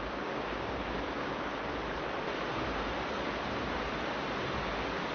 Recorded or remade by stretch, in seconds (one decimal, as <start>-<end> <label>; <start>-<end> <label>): 0.0-1.7 remade; 1.7-5.1 recorded

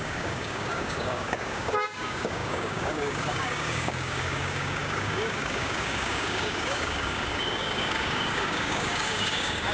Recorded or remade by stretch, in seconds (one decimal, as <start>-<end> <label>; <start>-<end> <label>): 0.0-9.7 remade

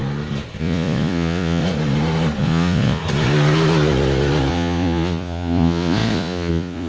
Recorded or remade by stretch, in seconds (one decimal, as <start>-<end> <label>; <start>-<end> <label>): 0.0-0.6 recorded; 0.6-1.6 remade; 1.6-2.4 recorded; 2.4-3.0 remade; 3.0-4.5 recorded; 4.5-6.9 remade

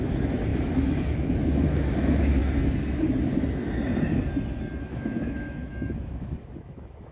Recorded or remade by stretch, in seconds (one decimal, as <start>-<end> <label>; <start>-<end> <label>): 0.0-2.4 remade; 2.4-4.8 recorded; 4.8-7.1 remade

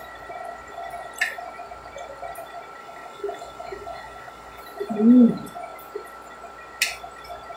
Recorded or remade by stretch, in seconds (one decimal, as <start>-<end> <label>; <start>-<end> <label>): 0.0-2.8 recorded; 2.8-4.6 remade; 4.6-7.6 recorded

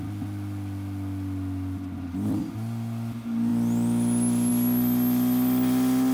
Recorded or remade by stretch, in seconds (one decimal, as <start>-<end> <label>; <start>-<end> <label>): 0.0-6.1 recorded

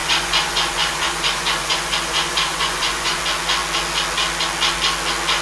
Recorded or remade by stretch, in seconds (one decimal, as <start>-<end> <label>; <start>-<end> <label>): 0.0-3.2 remade; 3.2-5.4 recorded